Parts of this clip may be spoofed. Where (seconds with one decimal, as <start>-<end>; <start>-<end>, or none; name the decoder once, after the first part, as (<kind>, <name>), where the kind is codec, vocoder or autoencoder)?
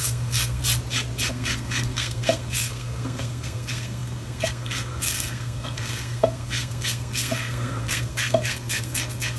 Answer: 0.0-0.6 (codec, SNAC); 1.3-9.4